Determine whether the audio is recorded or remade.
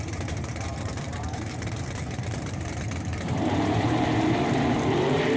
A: remade